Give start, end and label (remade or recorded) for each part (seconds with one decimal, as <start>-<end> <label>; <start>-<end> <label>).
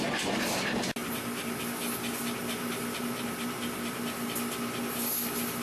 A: 0.0-1.0 recorded; 1.0-1.6 remade; 1.6-2.4 recorded; 2.4-4.0 remade; 4.0-5.6 recorded